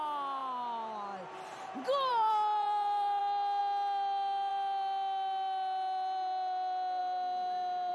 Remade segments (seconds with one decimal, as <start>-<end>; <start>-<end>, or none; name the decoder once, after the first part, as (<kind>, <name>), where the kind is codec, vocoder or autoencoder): 2.1-3.2 (vocoder, BigVGAN v2)